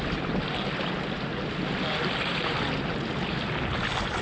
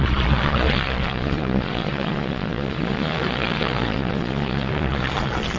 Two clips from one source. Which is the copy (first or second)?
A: second